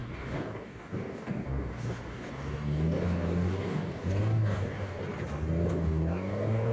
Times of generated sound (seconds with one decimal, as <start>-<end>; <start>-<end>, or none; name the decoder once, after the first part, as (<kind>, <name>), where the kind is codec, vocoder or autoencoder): 0.0-5.0 (codec, DAC); 5.7-6.7